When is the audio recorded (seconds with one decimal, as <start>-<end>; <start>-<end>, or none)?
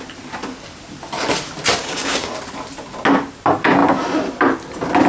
0.0-1.8; 2.3-5.1